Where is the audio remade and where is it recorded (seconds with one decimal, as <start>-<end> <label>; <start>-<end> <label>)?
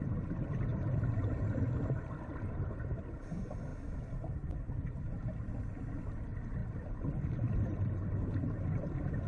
0.0-0.7 recorded; 0.7-2.1 remade; 2.1-6.6 recorded; 6.6-7.9 remade; 7.9-9.3 recorded